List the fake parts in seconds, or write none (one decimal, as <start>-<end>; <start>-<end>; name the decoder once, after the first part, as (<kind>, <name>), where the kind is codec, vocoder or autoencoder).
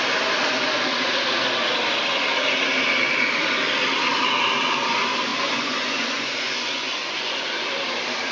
5.3-7.7 (vocoder, Vocos)